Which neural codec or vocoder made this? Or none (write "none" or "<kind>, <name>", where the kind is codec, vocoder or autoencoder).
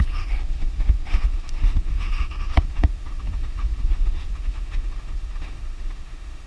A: autoencoder, DAC-VAE